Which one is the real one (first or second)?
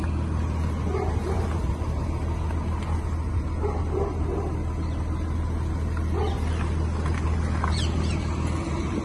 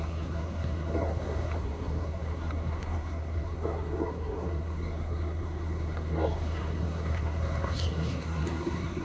first